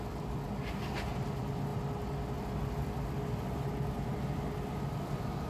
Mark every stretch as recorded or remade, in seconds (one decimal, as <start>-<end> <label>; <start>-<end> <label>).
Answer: 0.0-5.5 recorded